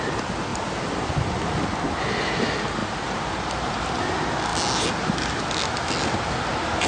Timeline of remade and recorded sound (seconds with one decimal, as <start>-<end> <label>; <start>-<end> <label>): 0.0-2.8 recorded; 2.8-4.0 remade; 4.0-6.9 recorded